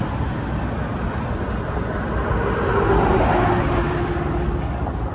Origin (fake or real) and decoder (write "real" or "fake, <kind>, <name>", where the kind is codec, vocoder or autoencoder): real